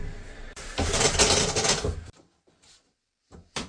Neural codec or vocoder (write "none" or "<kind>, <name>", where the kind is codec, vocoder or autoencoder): none